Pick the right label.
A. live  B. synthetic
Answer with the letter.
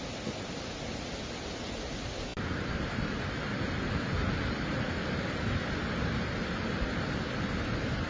A